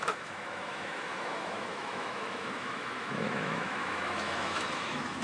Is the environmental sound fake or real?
fake